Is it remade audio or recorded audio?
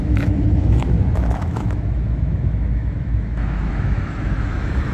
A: remade